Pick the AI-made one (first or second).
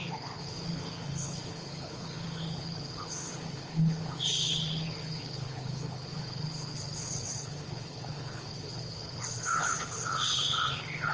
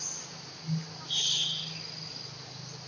first